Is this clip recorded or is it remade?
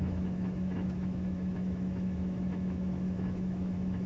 remade